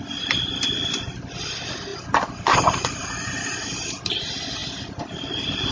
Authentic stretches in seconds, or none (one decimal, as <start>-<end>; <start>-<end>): 0.0-4.6